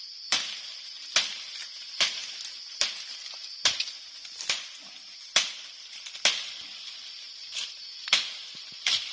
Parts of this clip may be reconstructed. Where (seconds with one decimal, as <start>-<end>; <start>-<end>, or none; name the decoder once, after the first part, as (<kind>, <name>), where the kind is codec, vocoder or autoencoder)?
none